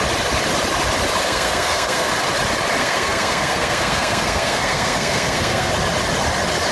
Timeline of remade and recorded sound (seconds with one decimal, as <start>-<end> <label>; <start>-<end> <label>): 0.0-1.2 recorded; 1.2-2.1 remade; 2.1-2.8 recorded; 2.8-5.7 remade; 5.7-6.7 recorded